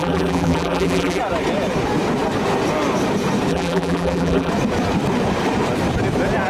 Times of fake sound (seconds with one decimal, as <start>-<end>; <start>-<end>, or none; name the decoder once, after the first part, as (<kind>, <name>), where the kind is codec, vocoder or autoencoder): 0.0-1.2 (vocoder, BigVGAN v2); 3.5-4.5